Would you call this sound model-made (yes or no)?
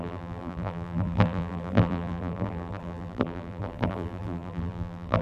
yes